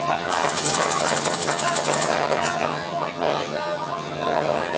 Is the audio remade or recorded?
remade